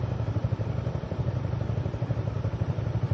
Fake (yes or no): yes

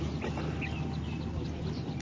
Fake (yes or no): no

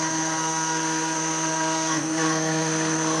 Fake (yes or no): yes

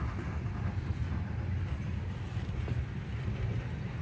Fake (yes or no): no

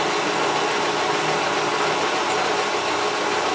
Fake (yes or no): no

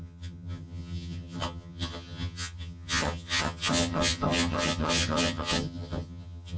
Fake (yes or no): yes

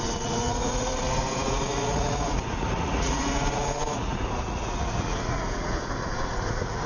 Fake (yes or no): yes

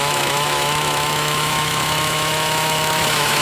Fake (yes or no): yes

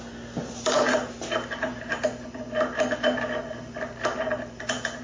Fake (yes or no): no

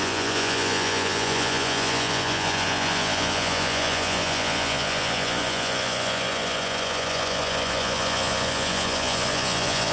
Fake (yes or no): yes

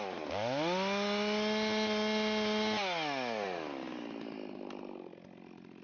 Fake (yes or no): no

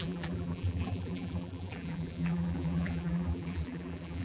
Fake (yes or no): yes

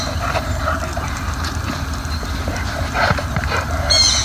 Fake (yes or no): yes